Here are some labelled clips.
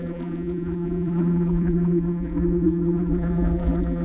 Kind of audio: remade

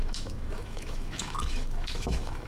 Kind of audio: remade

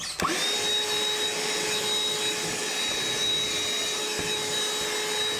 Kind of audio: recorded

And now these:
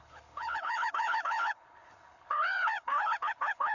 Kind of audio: remade